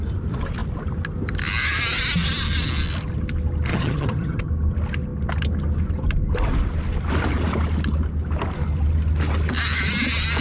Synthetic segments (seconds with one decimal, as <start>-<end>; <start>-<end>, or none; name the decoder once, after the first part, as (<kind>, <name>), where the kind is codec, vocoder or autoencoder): 3.7-4.5 (vocoder, HiFi-GAN)